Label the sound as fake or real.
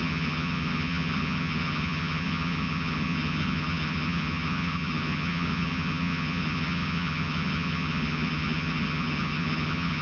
fake